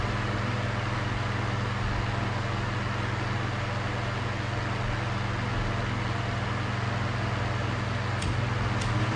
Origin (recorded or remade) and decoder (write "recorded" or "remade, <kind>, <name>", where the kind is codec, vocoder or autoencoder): recorded